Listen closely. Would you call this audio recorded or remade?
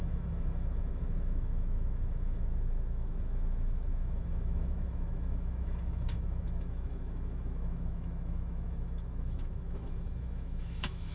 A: remade